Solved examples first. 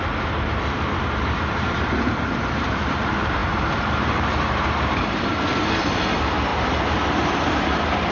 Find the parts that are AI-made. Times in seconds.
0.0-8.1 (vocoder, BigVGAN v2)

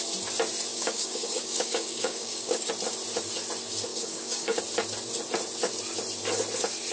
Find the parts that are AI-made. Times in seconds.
0.7-2.7 (codec, DAC); 3.9-4.6